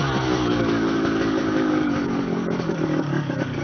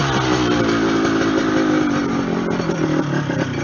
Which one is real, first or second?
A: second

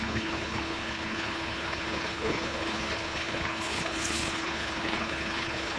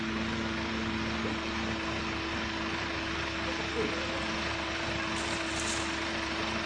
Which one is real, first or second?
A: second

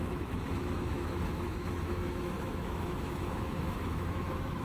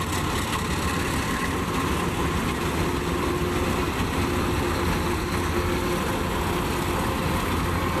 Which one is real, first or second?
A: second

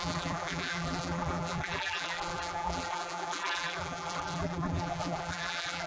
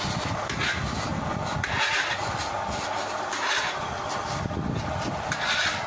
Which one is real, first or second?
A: second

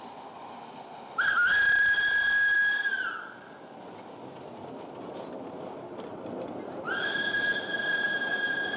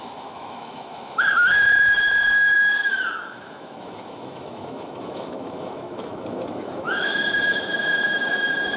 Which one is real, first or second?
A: first